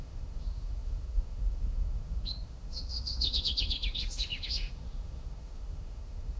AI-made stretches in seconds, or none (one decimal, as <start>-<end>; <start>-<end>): 0.0-6.4